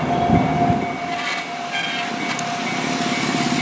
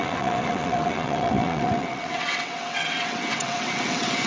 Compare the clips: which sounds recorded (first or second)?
first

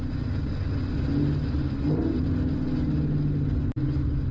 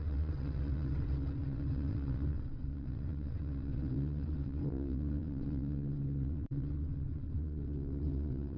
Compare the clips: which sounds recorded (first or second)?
first